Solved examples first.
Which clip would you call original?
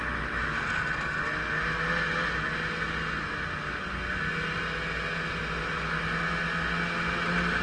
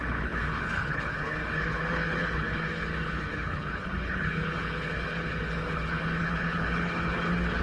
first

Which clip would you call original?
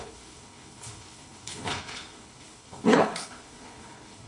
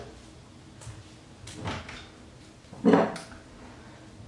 second